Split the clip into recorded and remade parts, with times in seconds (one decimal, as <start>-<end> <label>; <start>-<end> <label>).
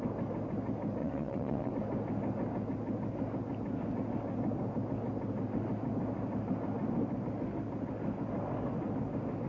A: 0.0-1.0 recorded; 1.0-1.7 remade; 1.7-9.5 recorded